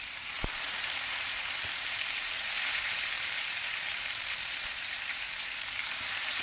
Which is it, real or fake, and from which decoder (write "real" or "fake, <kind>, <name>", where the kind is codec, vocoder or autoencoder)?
fake, vocoder, BigVGAN v2